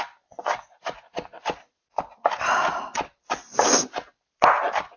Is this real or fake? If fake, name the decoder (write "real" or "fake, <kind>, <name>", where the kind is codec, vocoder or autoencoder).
real